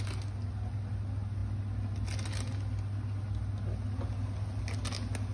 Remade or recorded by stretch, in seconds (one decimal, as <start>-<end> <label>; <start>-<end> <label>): 0.0-5.3 recorded